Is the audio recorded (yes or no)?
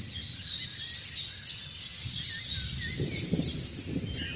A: yes